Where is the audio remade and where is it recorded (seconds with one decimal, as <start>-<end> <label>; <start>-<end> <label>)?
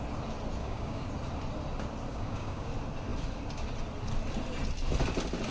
0.0-0.6 recorded; 0.6-1.1 remade; 1.1-2.1 recorded; 2.1-2.7 remade; 2.7-5.5 recorded